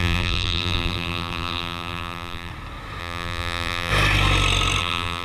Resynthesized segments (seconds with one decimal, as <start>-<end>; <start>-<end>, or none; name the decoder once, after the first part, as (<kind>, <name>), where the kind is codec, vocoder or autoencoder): 0.0-2.5 (vocoder, BigVGAN v2); 3.0-3.9; 4.8-5.2